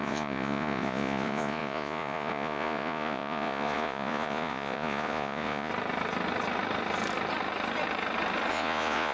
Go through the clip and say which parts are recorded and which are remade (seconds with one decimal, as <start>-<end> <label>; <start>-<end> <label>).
0.0-5.7 remade; 5.7-8.5 recorded; 8.5-9.1 remade